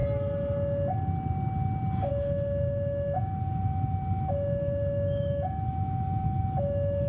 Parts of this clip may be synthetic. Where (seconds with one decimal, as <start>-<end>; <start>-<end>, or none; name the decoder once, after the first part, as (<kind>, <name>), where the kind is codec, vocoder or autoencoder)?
2.1-7.1 (autoencoder, DAC-VAE)